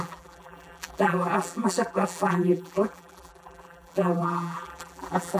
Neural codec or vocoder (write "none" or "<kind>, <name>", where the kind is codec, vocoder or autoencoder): vocoder, BigVGAN v2